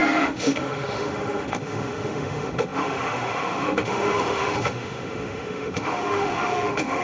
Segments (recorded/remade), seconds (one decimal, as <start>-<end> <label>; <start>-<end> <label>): 0.0-7.0 remade